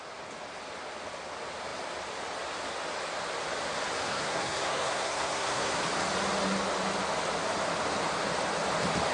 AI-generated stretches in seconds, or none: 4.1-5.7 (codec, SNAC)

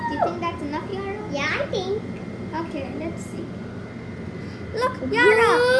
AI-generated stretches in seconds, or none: none

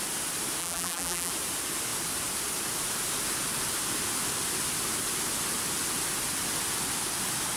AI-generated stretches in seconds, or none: 0.6-1.3 (vocoder, BigVGAN v2)

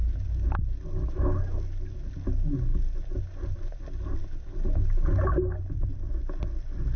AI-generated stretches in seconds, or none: none

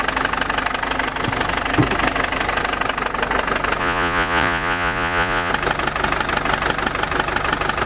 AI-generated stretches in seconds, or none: 3.8-5.5 (vocoder, Vocos)

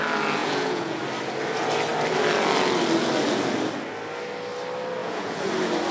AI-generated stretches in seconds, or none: 0.4-1.0 (vocoder, Vocos); 5.0-5.5

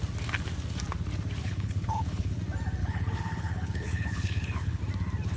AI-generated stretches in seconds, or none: 1.4-2.4 (codec, HILCodec); 2.8-4.8